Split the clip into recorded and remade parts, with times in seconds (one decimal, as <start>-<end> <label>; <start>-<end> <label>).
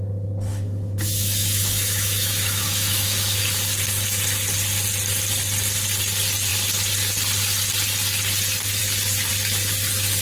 0.0-0.5 recorded; 0.5-3.4 remade; 3.4-10.2 recorded